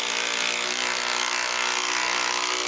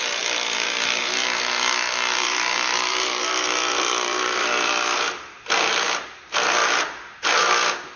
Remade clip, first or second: second